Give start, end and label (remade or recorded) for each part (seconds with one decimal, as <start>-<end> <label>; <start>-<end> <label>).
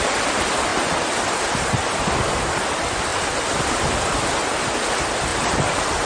0.0-0.7 remade; 0.7-2.5 recorded; 2.5-5.3 remade; 5.3-6.1 recorded